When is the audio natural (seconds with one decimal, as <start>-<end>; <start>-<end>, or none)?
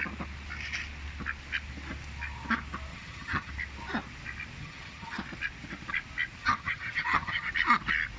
0.0-2.9; 3.5-4.6; 5.2-6.4; 7.5-8.2